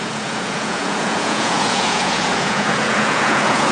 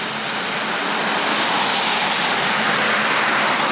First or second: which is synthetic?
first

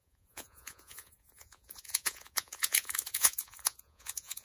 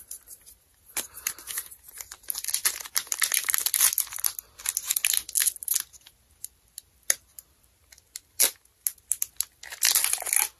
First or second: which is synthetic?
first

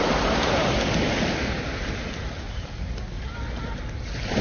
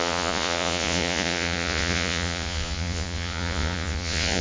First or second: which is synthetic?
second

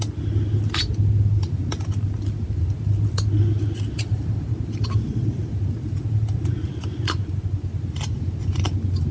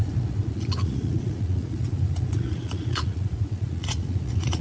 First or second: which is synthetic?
second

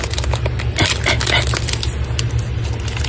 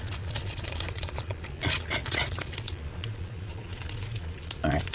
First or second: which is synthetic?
second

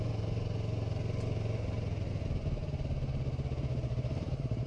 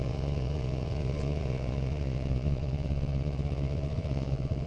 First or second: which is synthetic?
second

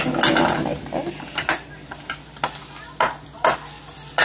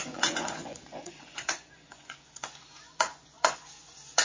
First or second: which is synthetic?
second